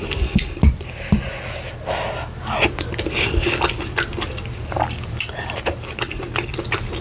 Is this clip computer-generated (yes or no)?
no